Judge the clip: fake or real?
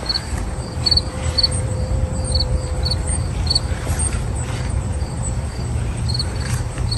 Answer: fake